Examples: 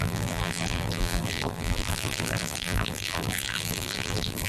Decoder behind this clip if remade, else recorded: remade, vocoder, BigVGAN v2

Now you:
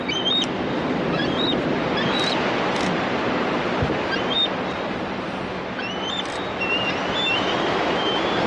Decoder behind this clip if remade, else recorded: recorded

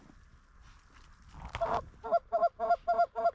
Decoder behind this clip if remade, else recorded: recorded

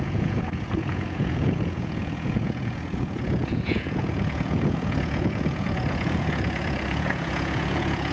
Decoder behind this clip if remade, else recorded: remade, vocoder, Vocos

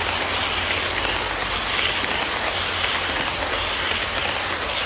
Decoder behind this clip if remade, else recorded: recorded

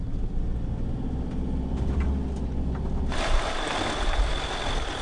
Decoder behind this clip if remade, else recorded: recorded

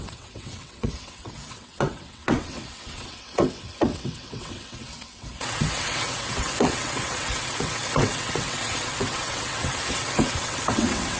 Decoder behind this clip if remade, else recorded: remade, vocoder, WaveNeXt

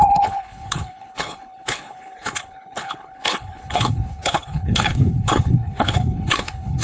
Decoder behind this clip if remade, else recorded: remade, codec, HILCodec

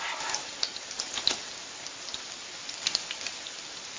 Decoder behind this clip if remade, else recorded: recorded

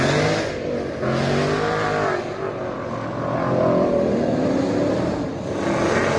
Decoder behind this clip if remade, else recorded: recorded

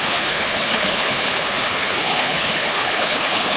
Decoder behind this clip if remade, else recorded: remade, codec, HILCodec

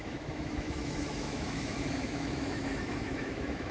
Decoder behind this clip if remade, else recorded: remade, autoencoder, DAC-VAE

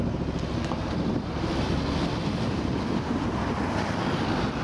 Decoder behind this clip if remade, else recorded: recorded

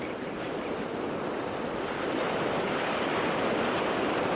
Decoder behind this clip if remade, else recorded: recorded